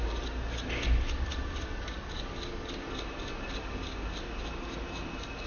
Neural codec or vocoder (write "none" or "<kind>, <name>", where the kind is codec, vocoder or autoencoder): none